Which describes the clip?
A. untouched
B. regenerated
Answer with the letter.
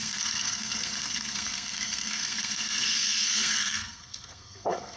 B